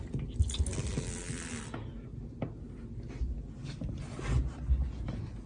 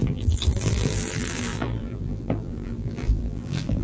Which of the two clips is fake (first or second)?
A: second